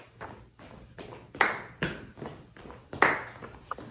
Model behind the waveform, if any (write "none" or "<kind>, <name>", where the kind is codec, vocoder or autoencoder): none